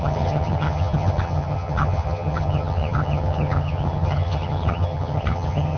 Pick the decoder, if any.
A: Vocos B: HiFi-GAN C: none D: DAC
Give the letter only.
B